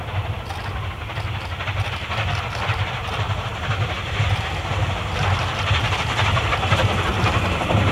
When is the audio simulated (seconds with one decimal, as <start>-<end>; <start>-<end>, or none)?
7.1-7.9